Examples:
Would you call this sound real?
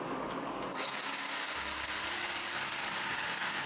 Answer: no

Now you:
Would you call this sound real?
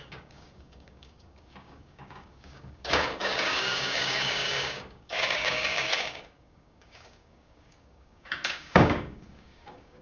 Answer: no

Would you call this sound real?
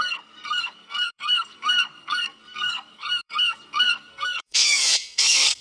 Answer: no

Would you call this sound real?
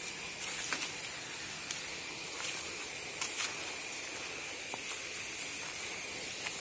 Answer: yes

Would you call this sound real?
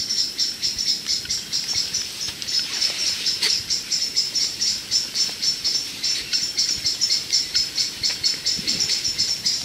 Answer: no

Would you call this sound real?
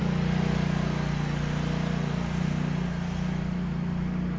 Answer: yes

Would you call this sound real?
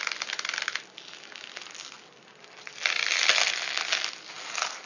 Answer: yes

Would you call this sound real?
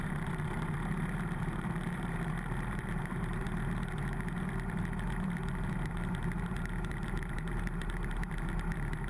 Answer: no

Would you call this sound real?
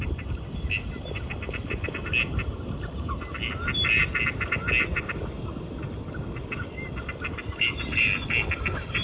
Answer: yes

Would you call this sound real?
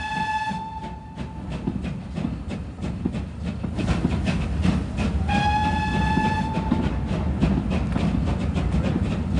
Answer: yes